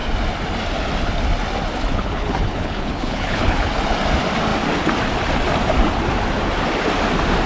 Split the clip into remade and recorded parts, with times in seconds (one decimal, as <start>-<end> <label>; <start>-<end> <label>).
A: 0.0-1.9 recorded; 1.9-3.7 remade; 3.7-7.5 recorded